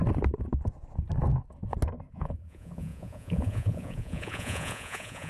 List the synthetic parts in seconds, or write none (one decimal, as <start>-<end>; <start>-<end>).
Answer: 2.1-5.3